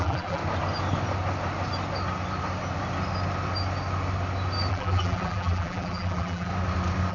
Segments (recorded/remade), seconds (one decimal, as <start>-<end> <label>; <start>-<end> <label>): 0.0-0.4 remade; 0.4-4.7 recorded; 4.7-6.5 remade; 6.5-7.1 recorded